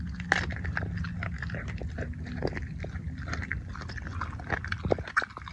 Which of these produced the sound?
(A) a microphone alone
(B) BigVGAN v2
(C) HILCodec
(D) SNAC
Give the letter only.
A